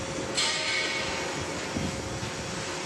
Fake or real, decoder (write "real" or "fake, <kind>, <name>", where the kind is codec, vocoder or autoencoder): real